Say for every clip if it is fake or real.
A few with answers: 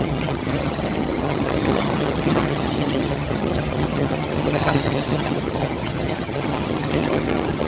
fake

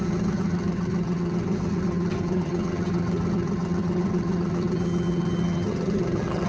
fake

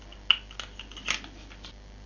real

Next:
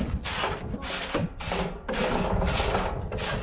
real